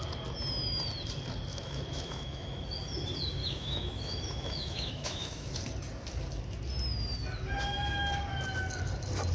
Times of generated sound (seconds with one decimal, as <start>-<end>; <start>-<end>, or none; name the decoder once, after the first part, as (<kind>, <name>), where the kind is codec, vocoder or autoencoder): 1.5-2.6 (autoencoder, DAC-VAE); 3.4-5.5